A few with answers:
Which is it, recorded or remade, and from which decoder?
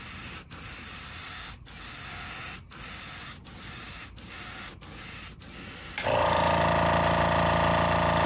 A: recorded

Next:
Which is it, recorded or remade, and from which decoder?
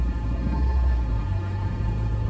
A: remade, codec, SNAC